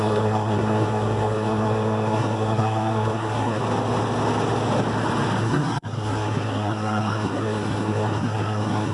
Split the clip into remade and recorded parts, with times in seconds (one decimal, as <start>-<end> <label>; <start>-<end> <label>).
0.0-3.6 remade; 3.6-5.4 recorded; 5.4-8.9 remade